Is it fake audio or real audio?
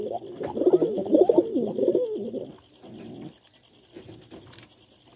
real